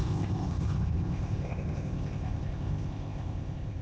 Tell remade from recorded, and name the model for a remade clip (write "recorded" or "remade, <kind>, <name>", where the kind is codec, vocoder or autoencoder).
remade, codec, ZipCodec